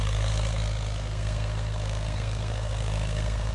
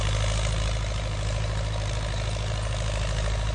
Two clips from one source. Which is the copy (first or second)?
first